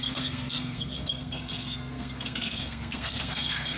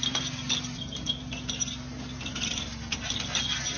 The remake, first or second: first